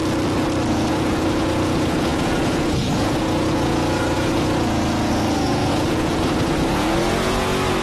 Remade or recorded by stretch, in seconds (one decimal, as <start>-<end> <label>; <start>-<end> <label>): 0.0-0.9 recorded; 0.9-7.8 remade